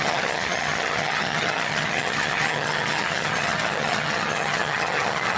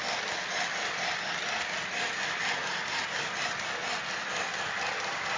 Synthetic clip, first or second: first